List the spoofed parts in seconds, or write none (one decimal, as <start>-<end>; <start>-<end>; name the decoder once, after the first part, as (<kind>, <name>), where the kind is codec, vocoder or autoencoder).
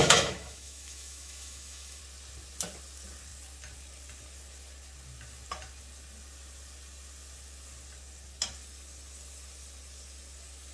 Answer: 0.0-2.0 (autoencoder, DAC-VAE)